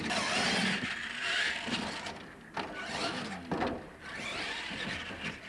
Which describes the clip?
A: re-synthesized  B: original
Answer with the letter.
B